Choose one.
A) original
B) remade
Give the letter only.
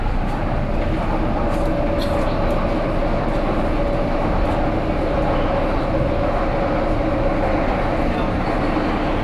A